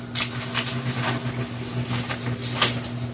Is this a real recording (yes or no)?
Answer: yes